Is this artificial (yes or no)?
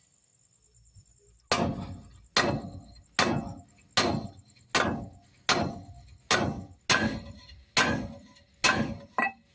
no